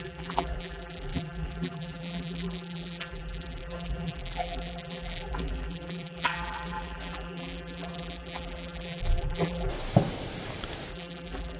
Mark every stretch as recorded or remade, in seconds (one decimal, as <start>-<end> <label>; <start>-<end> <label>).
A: 0.0-9.7 remade; 9.7-10.9 recorded; 10.9-11.6 remade